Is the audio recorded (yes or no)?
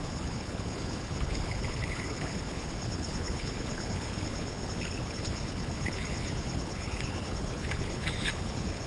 no